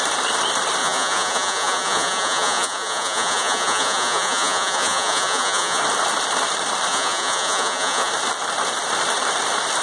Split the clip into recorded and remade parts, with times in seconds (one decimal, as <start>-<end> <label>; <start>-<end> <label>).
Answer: 0.0-0.8 recorded; 0.8-5.8 remade; 5.8-6.9 recorded; 6.9-8.1 remade; 8.1-9.8 recorded